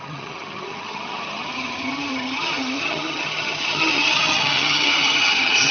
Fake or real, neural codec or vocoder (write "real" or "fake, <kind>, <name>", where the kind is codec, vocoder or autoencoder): fake, vocoder, HiFi-GAN